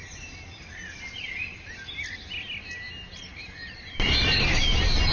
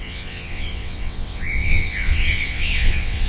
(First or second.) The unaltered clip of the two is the first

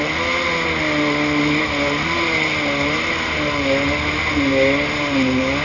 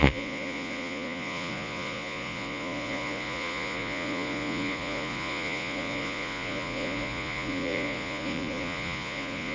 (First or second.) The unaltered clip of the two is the first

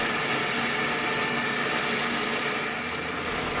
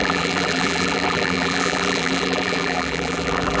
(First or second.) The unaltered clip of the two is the first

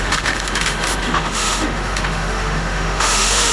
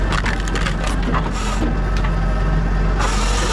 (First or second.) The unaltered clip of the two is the second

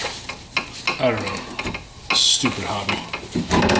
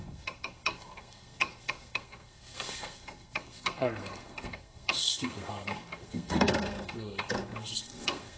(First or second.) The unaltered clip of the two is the first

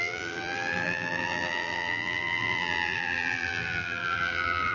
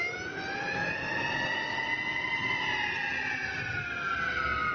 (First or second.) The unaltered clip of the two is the second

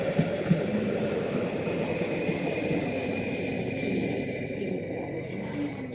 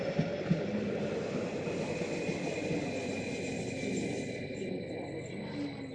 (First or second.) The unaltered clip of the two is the second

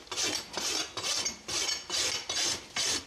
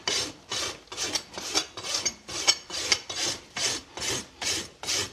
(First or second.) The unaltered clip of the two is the first